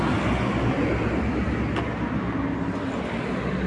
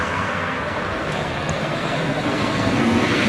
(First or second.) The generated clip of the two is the second